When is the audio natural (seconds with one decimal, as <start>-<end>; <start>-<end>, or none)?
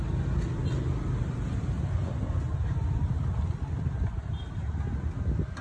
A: 0.0-5.6